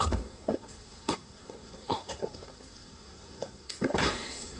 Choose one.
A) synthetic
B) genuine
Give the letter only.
A